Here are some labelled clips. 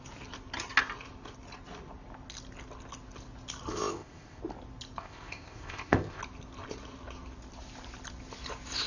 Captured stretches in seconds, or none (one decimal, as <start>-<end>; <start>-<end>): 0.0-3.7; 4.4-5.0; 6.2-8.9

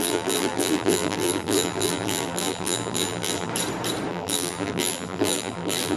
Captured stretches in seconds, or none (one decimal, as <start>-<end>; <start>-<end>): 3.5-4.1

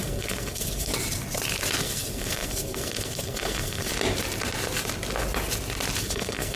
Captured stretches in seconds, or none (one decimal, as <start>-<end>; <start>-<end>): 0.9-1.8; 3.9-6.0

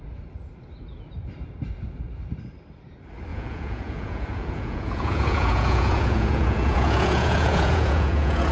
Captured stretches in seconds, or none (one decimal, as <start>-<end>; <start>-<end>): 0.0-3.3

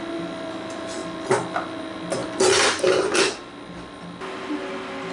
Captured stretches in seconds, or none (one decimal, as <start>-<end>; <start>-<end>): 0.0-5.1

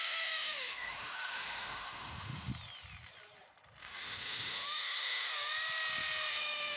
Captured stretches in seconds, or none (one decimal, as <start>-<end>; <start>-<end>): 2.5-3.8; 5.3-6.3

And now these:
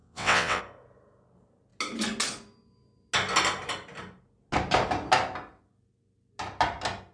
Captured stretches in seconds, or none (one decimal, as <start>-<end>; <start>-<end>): 0.6-7.1